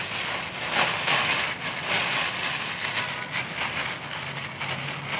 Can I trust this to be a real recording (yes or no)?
yes